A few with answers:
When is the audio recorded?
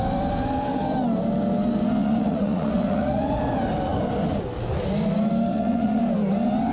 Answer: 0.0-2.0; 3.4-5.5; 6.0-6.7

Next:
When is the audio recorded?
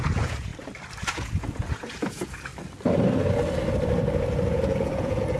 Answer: 0.5-1.1; 2.5-4.4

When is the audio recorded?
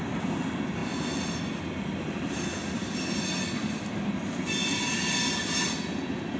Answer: 0.0-6.4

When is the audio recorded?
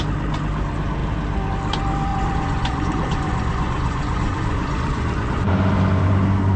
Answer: 0.0-2.1; 5.5-6.6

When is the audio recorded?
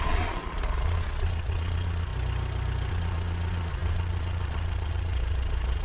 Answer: 2.1-2.9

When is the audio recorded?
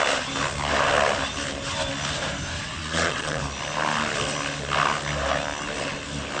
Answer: 0.0-2.8; 3.4-6.4